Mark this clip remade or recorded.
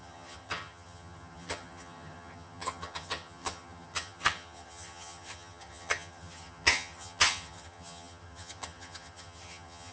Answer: remade